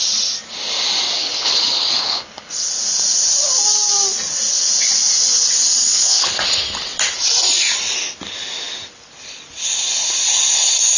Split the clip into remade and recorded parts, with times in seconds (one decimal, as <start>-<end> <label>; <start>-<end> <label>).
0.0-1.2 recorded; 1.2-2.7 remade; 2.7-5.8 recorded; 5.8-6.3 remade; 6.3-11.0 recorded